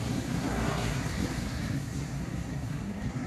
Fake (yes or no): yes